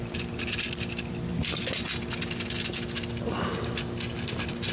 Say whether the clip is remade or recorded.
recorded